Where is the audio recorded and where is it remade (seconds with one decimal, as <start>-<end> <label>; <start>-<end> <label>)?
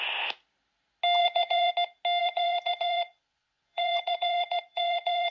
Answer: 0.0-1.2 recorded; 1.2-1.7 remade; 1.7-2.2 recorded; 2.2-5.3 remade